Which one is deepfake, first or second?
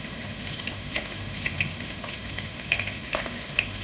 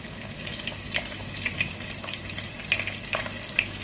first